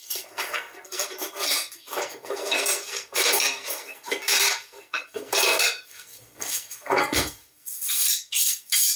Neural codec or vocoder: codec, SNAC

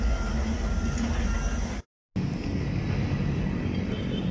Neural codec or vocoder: none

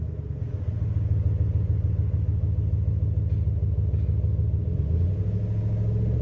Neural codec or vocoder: none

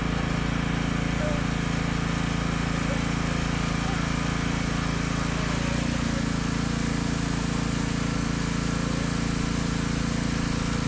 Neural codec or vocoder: none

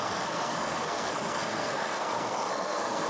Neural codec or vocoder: codec, SNAC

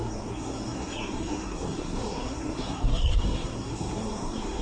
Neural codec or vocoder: codec, SNAC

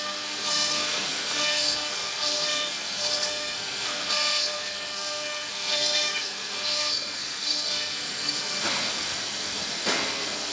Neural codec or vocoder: codec, SNAC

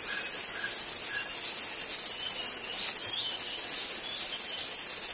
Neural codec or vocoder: none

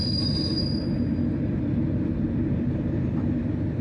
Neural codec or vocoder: none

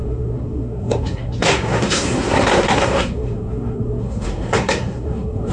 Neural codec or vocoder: codec, SNAC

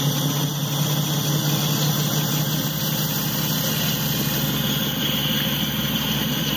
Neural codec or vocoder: none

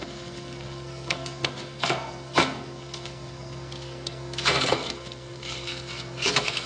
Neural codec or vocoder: codec, SNAC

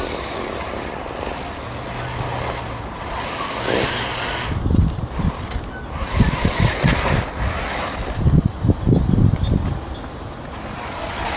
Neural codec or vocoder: none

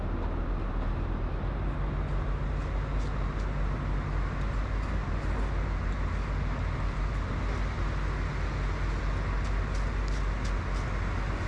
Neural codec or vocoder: none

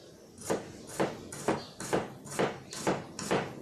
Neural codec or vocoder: none